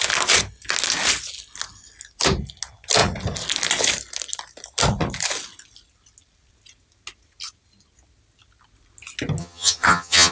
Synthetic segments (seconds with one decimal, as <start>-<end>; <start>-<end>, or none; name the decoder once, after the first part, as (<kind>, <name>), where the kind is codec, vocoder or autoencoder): 9.4-10.3 (vocoder, HiFi-GAN)